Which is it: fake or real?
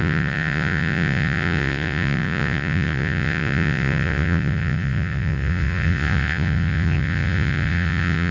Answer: fake